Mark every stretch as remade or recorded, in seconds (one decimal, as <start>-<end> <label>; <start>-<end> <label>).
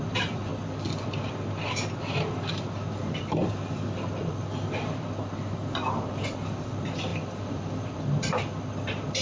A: 0.0-0.5 remade; 0.5-2.0 recorded; 2.0-9.2 remade